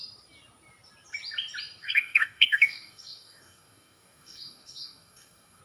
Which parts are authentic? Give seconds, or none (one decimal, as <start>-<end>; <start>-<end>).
0.0-1.8